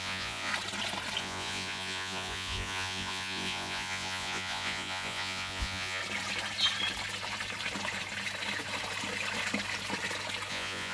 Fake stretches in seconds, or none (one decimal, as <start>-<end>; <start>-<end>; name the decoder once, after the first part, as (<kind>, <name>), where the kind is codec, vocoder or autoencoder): 0.0-0.5 (vocoder, Vocos); 1.2-6.0; 10.5-10.9